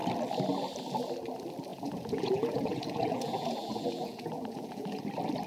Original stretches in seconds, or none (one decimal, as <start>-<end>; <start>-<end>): 0.0-1.7; 5.0-5.5